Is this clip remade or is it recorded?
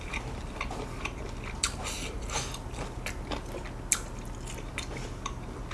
recorded